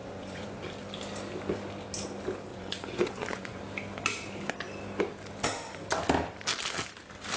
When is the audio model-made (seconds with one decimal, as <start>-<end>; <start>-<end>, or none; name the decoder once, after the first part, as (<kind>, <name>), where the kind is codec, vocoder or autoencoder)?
0.0-0.6 (vocoder, Vocos); 2.5-3.6